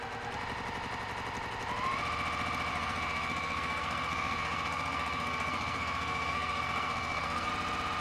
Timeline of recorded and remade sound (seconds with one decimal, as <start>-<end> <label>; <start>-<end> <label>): 0.0-2.7 recorded; 2.7-7.5 remade; 7.5-8.0 recorded